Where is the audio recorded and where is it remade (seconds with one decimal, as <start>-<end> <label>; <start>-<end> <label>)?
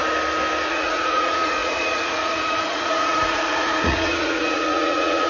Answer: 0.0-0.7 recorded; 0.7-5.3 remade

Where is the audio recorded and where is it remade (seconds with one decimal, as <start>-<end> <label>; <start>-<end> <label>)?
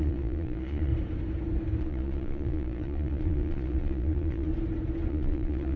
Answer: 0.0-0.9 remade; 0.9-1.8 recorded; 1.8-4.5 remade; 4.5-5.1 recorded; 5.1-5.8 remade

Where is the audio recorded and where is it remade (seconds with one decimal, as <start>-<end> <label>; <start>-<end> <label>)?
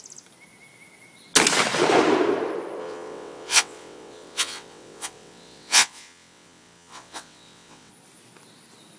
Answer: 0.0-2.8 recorded; 2.8-7.9 remade; 7.9-9.0 recorded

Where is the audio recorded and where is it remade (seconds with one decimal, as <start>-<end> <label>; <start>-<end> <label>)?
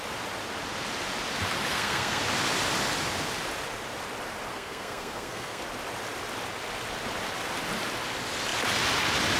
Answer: 0.0-1.7 recorded; 1.7-2.2 remade; 2.2-4.5 recorded; 4.5-5.6 remade; 5.6-9.4 recorded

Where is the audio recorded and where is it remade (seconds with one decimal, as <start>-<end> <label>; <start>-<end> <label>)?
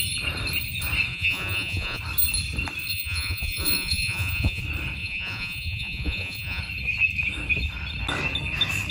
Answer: 0.0-1.1 recorded; 1.1-2.0 remade; 2.0-2.9 recorded; 2.9-4.6 remade; 4.6-5.0 recorded; 5.0-6.6 remade; 6.6-8.9 recorded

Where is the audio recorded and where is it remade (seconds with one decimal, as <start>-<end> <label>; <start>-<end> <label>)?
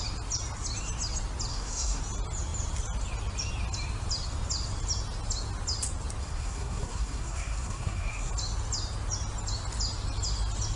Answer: 0.0-1.5 recorded; 1.5-2.0 remade; 2.0-6.2 recorded; 6.2-8.3 remade; 8.3-10.8 recorded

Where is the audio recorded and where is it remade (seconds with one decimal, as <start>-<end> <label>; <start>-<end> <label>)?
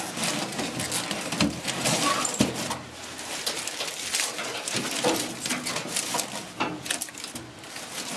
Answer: 0.0-8.2 recorded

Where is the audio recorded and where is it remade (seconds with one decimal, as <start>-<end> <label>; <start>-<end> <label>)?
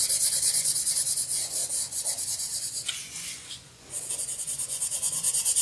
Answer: 0.0-5.6 remade